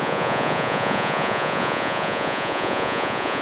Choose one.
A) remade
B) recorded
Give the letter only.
A